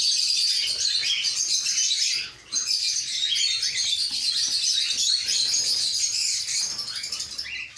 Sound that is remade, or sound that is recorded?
recorded